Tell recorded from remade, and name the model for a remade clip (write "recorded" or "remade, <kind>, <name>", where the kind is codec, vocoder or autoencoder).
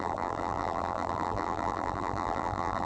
remade, vocoder, BigVGAN v2